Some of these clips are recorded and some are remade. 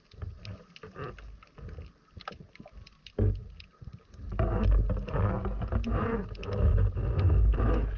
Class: recorded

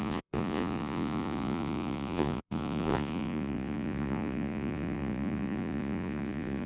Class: remade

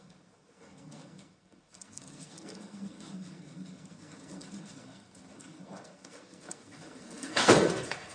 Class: remade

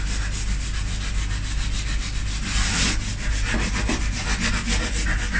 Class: recorded